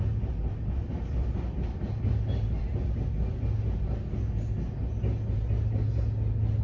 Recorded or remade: recorded